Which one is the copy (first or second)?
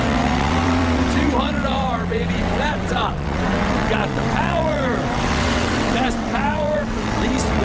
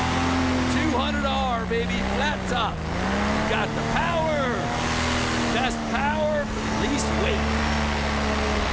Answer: first